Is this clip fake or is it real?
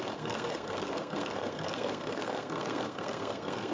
fake